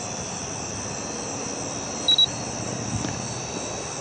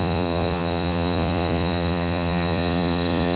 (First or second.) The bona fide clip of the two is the first